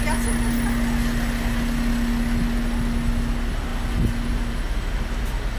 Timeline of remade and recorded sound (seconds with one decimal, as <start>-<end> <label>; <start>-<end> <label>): 0.0-5.6 recorded